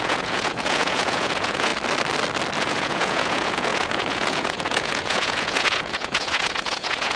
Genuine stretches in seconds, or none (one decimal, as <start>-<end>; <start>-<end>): 1.7-2.6